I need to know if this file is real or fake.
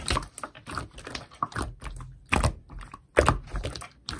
real